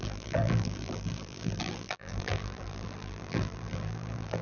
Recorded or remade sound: remade